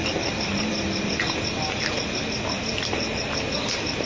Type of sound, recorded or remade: recorded